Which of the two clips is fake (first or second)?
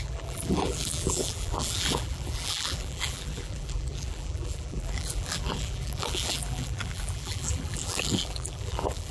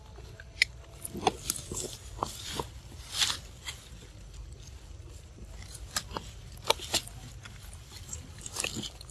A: first